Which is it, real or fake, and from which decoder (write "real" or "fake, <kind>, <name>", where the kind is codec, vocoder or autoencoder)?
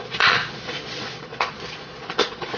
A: fake, vocoder, Vocos